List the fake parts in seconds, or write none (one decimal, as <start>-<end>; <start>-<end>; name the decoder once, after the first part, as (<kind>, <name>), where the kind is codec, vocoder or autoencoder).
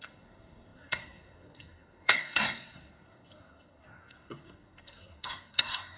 0.0-6.0 (codec, SNAC)